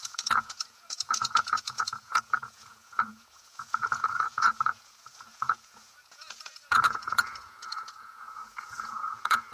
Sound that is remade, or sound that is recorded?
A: remade